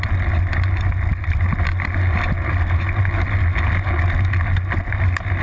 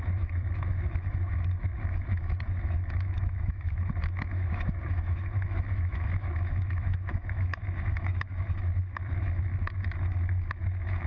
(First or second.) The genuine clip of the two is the first